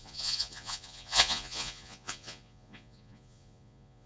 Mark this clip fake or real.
fake